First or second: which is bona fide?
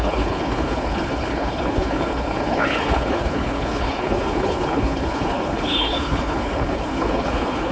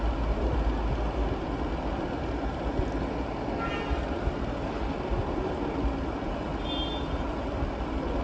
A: second